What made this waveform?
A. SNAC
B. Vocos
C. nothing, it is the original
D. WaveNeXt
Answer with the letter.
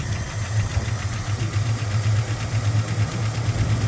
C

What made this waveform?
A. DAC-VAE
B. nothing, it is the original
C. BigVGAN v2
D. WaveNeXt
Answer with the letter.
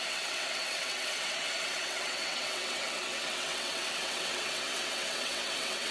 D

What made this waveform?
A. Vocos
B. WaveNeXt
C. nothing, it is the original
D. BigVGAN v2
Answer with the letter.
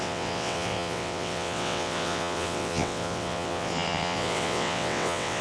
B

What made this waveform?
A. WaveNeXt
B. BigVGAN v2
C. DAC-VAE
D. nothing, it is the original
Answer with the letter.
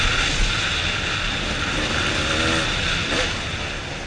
D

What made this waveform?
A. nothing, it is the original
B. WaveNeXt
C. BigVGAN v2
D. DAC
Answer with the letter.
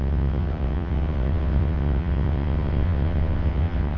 B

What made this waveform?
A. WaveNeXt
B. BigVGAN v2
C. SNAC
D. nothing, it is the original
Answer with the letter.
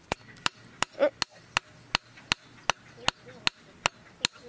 D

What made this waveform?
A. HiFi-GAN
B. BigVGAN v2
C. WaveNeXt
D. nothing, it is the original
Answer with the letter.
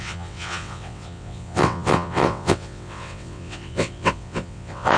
C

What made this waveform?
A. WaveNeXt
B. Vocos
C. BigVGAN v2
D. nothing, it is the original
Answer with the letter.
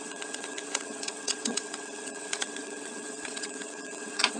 A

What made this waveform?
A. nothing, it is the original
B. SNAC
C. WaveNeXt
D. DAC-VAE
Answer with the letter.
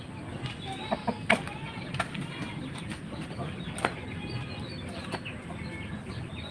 A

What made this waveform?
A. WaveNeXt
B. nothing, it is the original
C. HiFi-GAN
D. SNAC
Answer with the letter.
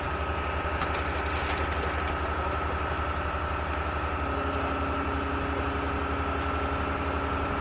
B